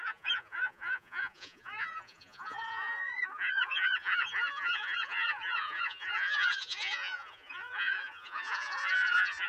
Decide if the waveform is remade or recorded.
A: remade